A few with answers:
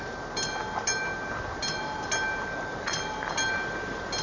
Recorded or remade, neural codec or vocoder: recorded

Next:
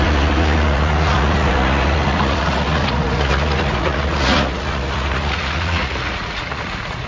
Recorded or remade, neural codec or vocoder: remade, vocoder, Vocos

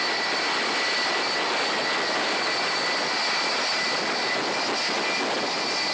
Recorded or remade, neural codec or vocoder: recorded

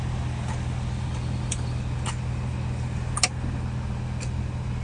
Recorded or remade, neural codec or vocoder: recorded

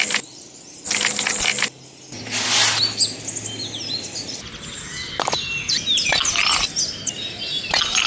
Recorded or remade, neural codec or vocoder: recorded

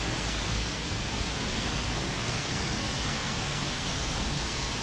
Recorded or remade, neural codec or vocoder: remade, codec, SNAC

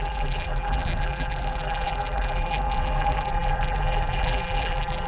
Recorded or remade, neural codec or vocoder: remade, vocoder, BigVGAN v2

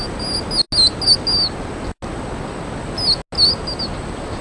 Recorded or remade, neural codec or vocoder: recorded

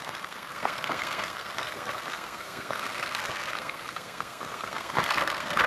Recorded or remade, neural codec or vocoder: remade, codec, SNAC